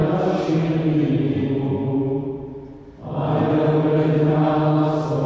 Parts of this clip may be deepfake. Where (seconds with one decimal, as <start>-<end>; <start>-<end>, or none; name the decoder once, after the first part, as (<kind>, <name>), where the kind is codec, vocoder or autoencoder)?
none